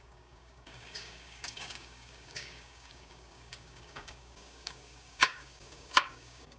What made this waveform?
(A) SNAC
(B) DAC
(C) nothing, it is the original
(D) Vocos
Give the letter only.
B